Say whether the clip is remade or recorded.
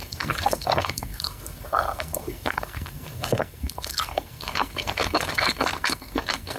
remade